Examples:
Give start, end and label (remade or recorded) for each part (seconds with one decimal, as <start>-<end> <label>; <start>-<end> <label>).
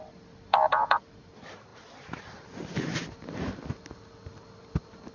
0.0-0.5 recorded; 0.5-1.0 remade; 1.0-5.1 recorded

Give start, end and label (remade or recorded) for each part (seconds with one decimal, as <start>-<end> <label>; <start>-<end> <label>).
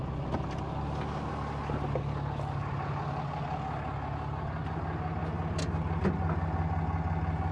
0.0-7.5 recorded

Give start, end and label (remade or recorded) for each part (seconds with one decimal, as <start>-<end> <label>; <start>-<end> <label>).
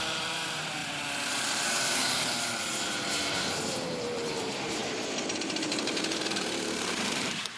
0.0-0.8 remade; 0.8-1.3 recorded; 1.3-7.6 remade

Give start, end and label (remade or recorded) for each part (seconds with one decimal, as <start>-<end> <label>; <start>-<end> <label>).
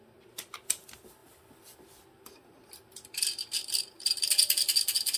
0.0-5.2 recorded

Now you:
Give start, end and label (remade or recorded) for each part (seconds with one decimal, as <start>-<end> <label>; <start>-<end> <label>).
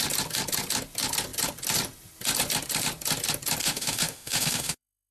0.0-3.6 recorded; 3.6-5.1 remade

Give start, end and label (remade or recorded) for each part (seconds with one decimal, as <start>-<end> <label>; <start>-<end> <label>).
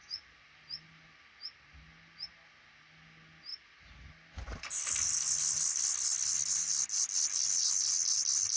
0.0-8.6 recorded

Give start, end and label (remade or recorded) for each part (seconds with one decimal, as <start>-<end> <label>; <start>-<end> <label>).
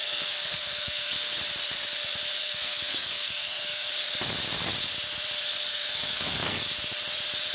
0.0-1.4 remade; 1.4-2.4 recorded; 2.4-3.9 remade; 3.9-5.7 recorded; 5.7-6.6 remade; 6.6-7.5 recorded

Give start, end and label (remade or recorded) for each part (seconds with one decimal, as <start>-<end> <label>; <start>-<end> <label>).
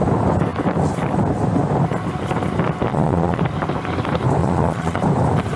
0.0-2.9 recorded; 2.9-3.4 remade; 3.4-4.4 recorded; 4.4-5.0 remade; 5.0-5.6 recorded